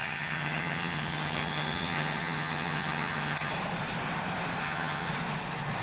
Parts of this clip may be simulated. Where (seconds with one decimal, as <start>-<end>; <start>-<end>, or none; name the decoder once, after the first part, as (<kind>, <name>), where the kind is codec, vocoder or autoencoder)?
0.0-3.5 (vocoder, HiFi-GAN); 4.6-5.1